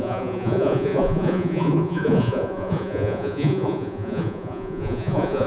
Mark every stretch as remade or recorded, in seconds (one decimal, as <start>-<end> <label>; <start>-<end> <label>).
0.0-5.5 remade